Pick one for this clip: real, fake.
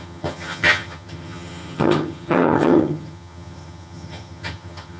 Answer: fake